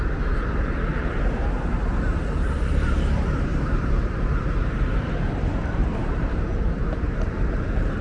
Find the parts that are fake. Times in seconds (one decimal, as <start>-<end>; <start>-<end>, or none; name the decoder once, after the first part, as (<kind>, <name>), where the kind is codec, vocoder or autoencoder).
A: 0.9-1.8 (vocoder, BigVGAN v2); 3.5-7.4